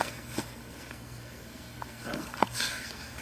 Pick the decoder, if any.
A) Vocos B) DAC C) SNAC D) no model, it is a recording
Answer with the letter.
C